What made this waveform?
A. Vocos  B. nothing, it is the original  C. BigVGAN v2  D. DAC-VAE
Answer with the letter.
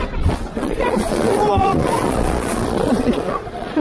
A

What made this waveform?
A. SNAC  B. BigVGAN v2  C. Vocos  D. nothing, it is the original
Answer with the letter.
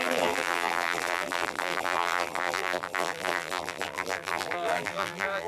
B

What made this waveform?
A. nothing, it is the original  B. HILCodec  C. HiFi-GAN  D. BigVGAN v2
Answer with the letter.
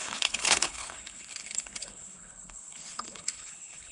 B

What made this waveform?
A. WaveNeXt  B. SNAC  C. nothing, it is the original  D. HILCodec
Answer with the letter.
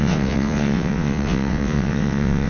A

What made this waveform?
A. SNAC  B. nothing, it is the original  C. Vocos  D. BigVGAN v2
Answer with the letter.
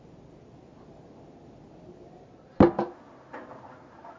B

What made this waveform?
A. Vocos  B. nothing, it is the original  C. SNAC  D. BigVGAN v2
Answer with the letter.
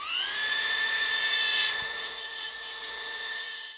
A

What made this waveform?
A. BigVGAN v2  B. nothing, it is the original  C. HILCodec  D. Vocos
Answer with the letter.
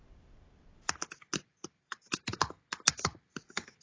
B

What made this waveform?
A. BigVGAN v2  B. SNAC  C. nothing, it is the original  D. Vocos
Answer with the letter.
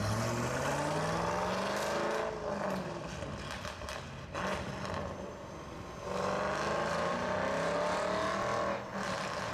C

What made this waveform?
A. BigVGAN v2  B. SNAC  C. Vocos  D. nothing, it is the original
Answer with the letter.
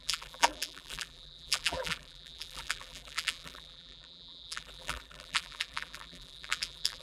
A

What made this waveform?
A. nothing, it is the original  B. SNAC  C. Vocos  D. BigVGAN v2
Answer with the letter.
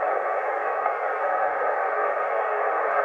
B